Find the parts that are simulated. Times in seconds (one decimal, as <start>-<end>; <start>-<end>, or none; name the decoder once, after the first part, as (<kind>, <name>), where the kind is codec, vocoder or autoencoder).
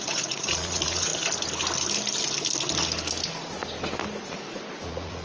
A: 0.0-1.1 (vocoder, Vocos); 4.2-5.2